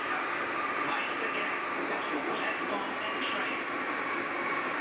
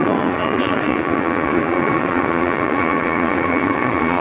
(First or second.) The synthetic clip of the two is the second